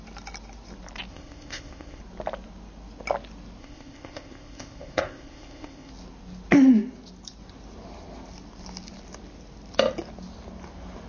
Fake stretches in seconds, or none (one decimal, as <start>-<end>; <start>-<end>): 1.1-2.0; 3.6-5.9